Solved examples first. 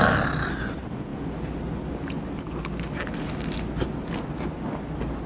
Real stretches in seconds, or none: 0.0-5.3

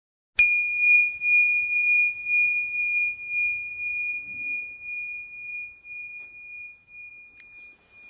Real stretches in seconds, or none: 0.0-0.7; 2.8-3.7; 7.1-8.1

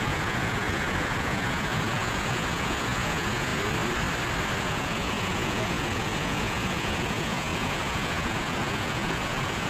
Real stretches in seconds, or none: 3.5-4.6

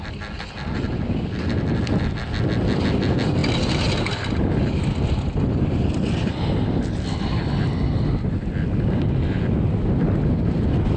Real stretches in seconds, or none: 0.0-11.0

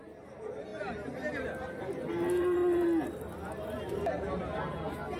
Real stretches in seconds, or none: 0.0-5.2